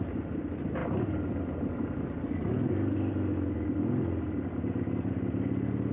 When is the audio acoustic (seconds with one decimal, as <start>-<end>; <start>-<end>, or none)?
0.0-5.9